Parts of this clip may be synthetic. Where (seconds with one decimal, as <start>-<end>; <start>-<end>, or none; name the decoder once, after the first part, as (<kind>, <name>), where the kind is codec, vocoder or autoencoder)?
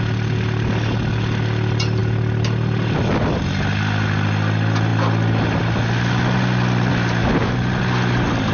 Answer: none